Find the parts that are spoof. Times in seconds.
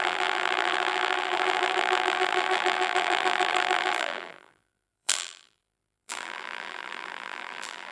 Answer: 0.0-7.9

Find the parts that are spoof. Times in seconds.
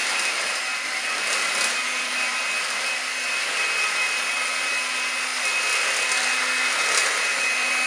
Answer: 0.0-0.6; 1.4-2.4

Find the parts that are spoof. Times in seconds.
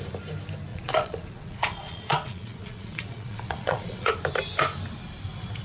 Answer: 0.7-4.1